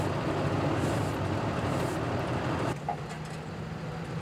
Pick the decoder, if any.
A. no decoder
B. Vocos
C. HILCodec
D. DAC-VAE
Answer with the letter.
A